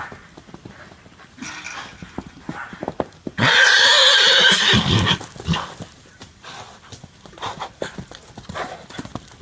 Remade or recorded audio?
recorded